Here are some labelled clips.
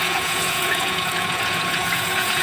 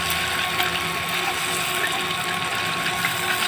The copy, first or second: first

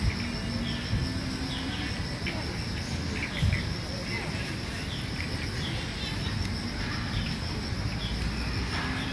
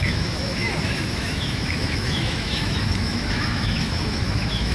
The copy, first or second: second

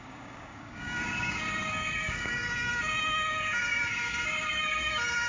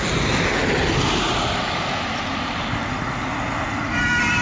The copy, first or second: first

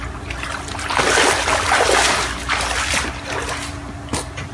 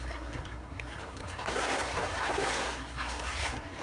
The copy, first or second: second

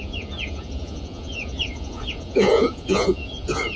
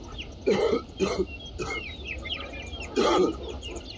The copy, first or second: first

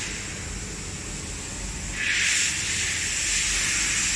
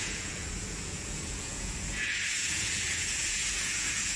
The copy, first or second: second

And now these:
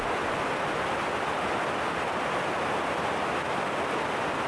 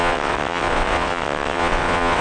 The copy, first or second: second